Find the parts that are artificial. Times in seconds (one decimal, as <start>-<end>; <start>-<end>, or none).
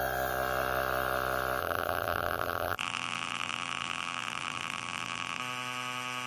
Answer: 1.6-5.4